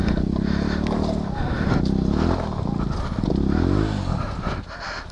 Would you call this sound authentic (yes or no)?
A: yes